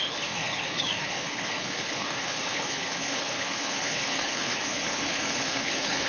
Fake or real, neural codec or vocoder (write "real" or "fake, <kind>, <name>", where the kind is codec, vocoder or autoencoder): fake, codec, HILCodec